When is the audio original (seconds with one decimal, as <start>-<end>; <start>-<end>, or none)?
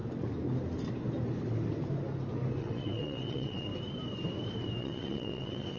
0.0-2.6; 3.7-4.8